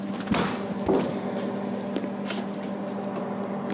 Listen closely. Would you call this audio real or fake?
real